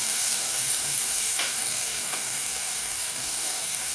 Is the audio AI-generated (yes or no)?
yes